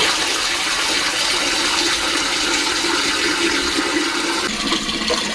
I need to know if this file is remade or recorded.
recorded